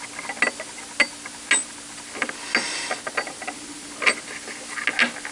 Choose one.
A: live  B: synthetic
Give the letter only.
A